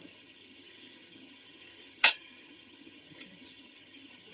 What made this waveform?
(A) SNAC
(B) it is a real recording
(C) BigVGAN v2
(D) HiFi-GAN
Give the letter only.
D